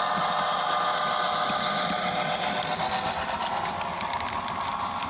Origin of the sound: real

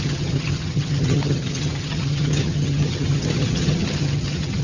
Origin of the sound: fake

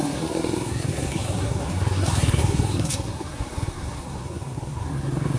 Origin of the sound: fake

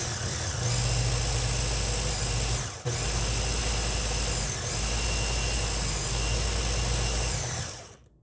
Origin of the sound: real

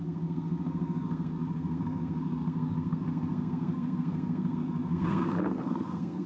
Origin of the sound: fake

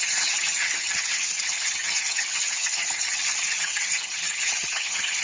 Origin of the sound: fake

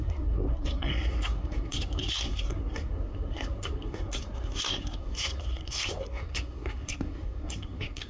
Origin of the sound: fake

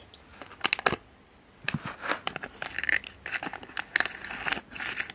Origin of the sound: real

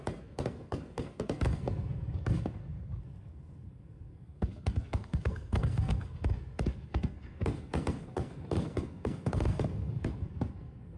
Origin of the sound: fake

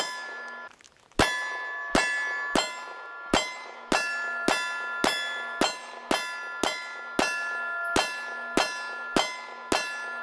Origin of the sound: real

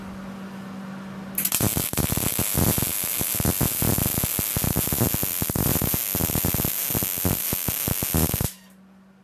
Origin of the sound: real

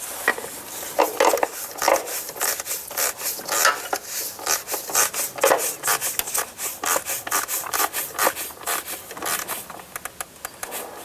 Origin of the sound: real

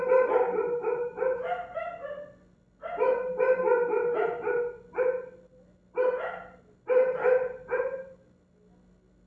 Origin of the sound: real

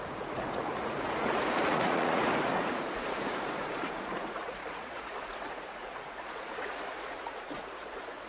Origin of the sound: fake